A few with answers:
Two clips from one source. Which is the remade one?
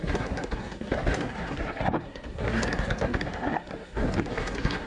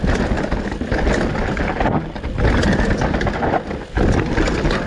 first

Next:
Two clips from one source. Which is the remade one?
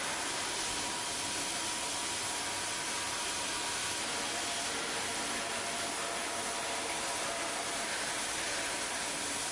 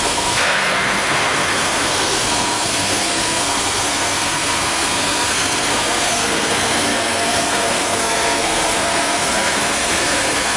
second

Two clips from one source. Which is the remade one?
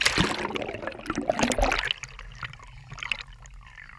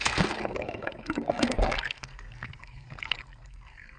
second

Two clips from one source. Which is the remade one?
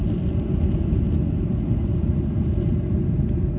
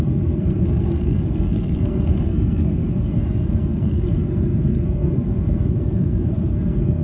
second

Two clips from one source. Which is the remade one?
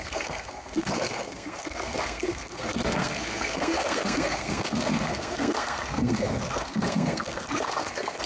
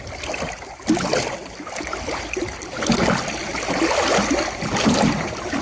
first